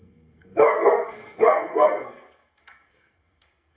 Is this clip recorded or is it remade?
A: remade